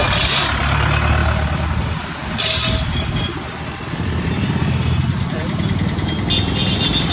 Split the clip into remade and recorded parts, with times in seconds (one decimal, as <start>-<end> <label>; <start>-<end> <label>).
0.0-7.1 recorded